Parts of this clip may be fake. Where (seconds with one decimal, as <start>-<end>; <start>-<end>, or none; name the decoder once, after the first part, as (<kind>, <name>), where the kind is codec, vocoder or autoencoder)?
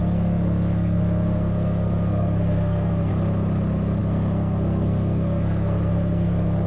0.0-3.1 (codec, SNAC); 4.0-6.7